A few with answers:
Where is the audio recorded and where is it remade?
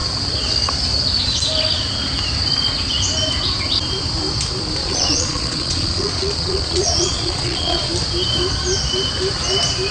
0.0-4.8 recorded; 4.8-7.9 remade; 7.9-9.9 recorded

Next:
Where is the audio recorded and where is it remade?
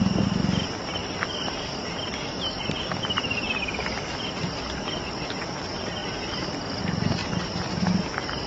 0.0-8.5 recorded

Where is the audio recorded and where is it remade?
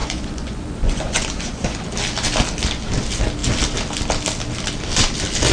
0.0-1.8 remade; 1.8-5.5 recorded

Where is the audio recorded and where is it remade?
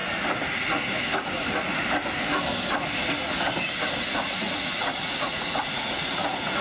0.0-4.0 recorded; 4.0-6.6 remade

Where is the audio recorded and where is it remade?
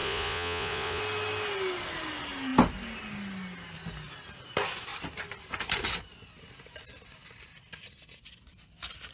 0.0-1.0 remade; 1.0-9.1 recorded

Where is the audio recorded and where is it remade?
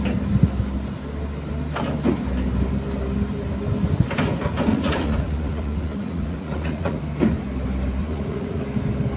0.0-4.7 recorded; 4.7-7.0 remade; 7.0-8.0 recorded; 8.0-8.6 remade; 8.6-9.2 recorded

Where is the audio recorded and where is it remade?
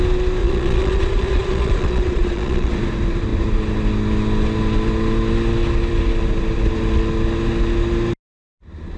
0.0-0.4 recorded; 0.4-2.7 remade; 2.7-9.0 recorded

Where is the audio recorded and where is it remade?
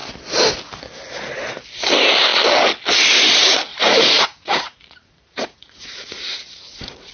0.0-3.7 recorded; 3.7-7.1 remade